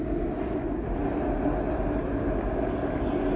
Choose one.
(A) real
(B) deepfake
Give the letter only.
A